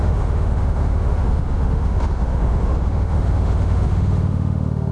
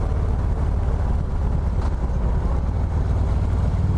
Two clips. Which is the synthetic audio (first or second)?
first